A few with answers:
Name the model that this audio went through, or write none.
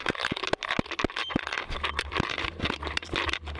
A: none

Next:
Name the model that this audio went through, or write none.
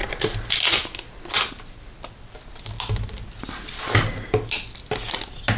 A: none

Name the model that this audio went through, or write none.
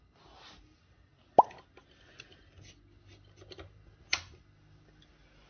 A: none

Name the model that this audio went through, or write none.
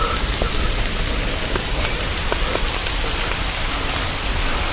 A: none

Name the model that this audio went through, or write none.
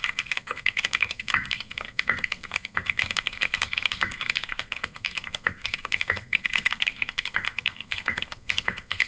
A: codec, SNAC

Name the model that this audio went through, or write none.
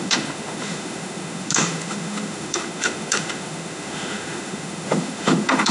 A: autoencoder, DAC-VAE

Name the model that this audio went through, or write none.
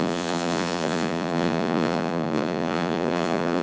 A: vocoder, Vocos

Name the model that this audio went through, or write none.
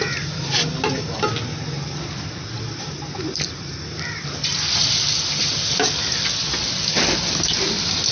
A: none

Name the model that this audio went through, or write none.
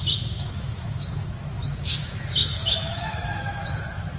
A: autoencoder, DAC-VAE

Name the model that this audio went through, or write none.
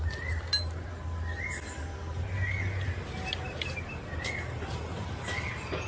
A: none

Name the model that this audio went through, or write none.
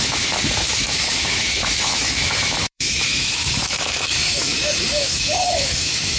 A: autoencoder, DAC-VAE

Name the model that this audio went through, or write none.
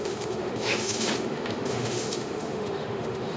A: autoencoder, DAC-VAE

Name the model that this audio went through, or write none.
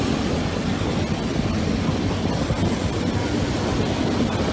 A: none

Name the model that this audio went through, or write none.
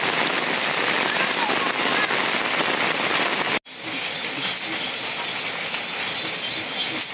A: none